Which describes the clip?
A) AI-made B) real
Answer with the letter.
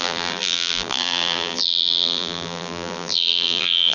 A